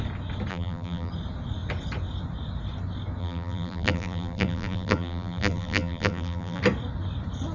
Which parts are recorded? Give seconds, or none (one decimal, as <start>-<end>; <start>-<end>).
0.0-0.5; 1.1-3.2; 6.6-7.5